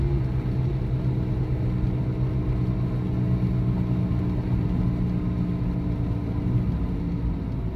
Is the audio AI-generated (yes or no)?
no